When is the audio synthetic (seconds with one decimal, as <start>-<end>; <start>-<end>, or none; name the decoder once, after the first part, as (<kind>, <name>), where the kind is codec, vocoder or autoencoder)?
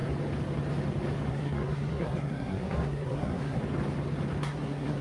1.3-3.6 (codec, SNAC); 4.4-5.0